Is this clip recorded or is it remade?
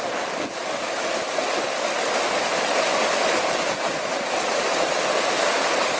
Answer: recorded